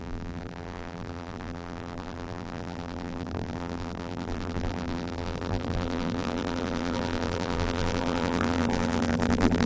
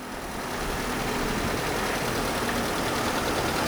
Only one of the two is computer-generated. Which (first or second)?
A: first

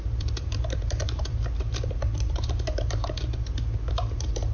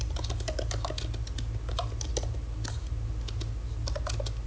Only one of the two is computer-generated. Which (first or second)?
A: first